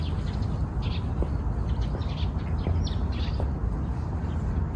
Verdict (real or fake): real